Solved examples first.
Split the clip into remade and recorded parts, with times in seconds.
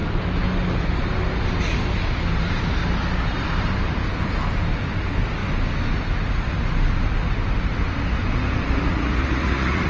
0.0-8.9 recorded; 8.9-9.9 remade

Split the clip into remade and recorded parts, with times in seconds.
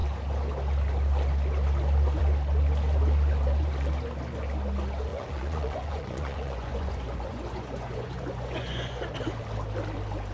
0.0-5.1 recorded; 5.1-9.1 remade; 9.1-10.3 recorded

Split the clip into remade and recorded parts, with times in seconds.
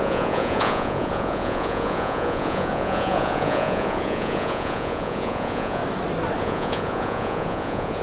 0.0-5.8 remade; 5.8-6.4 recorded; 6.4-8.0 remade